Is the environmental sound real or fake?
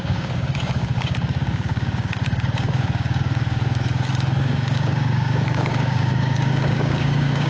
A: fake